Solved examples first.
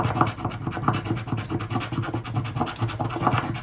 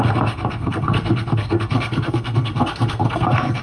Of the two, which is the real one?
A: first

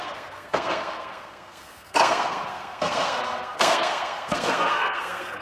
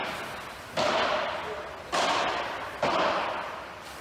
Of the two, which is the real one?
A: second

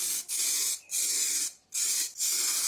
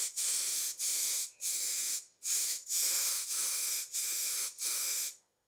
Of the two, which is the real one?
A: first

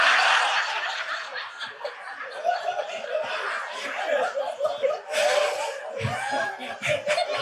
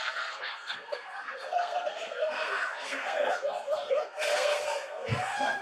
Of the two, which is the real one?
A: first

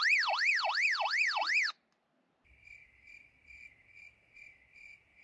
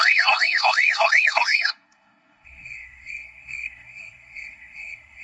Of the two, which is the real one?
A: first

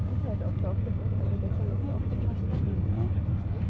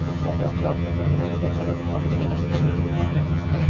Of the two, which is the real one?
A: first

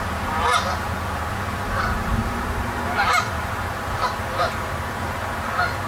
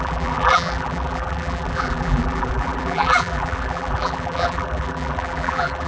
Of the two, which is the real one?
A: first